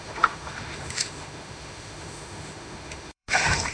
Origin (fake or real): fake